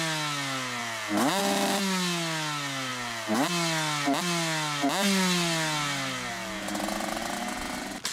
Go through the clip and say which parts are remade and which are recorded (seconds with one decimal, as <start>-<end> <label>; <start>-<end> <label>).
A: 0.0-8.1 recorded